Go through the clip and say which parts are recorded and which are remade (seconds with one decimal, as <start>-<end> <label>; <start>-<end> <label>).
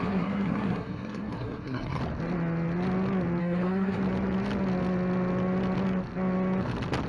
0.0-2.0 remade; 2.0-3.4 recorded; 3.4-4.0 remade; 4.0-7.1 recorded